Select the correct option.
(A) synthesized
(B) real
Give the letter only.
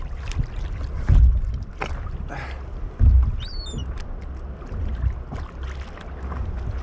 B